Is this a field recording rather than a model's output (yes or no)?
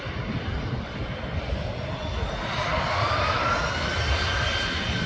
yes